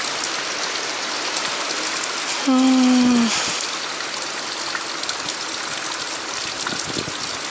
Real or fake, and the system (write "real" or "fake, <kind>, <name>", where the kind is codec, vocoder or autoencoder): real